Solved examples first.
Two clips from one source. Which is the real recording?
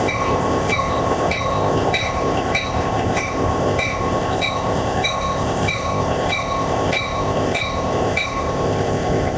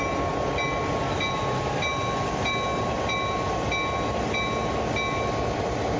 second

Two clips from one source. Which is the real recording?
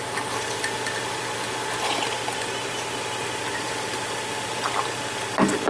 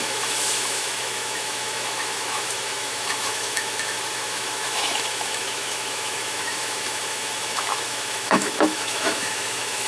first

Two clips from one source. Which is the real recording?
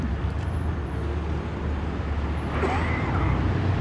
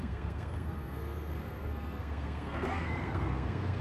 first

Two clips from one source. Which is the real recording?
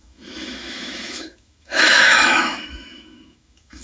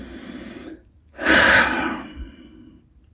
second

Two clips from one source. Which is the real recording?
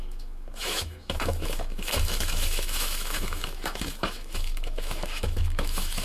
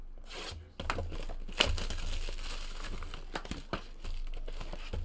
second